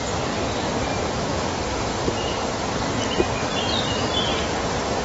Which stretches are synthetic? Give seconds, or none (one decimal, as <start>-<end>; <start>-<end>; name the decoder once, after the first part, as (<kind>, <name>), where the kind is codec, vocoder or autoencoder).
none